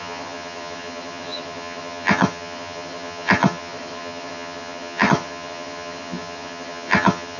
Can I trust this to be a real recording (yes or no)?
no